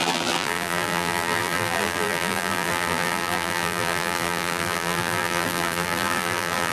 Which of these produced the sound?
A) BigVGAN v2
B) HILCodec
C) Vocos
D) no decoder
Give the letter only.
A